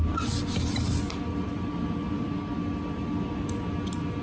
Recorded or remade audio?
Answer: recorded